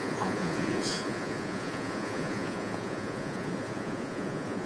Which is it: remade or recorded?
remade